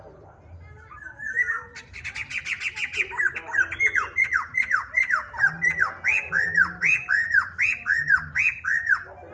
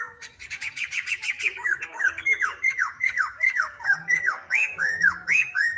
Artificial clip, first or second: second